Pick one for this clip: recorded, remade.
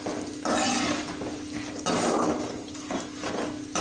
recorded